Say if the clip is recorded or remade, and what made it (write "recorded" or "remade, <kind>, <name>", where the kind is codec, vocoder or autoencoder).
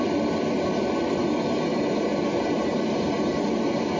recorded